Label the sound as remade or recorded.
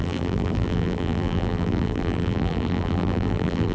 remade